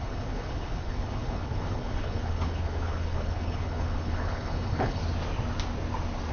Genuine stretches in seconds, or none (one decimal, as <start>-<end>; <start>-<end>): 5.0-6.3